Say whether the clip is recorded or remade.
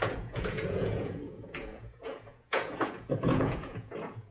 remade